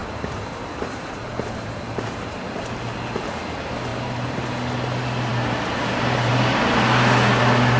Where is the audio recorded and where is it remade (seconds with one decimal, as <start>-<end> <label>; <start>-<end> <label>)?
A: 0.0-2.6 remade; 2.6-3.9 recorded; 3.9-4.4 remade; 4.4-5.3 recorded; 5.3-6.3 remade; 6.3-7.8 recorded

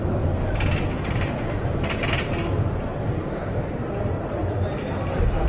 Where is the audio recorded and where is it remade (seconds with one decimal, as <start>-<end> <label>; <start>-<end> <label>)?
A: 0.0-1.6 recorded; 1.6-2.3 remade; 2.3-5.5 recorded

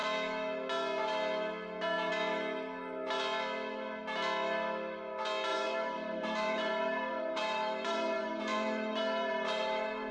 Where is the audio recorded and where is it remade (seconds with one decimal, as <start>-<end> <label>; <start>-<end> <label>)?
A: 0.0-5.5 recorded; 5.5-10.1 remade

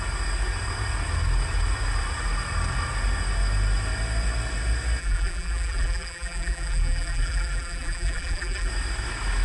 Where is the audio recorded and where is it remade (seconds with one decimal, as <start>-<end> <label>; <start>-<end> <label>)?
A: 0.0-5.0 recorded; 5.0-8.7 remade; 8.7-9.4 recorded

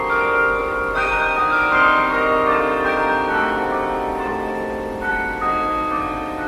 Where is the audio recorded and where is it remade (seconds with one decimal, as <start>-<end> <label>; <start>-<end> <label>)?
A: 0.0-0.6 recorded; 0.6-1.4 remade; 1.4-6.5 recorded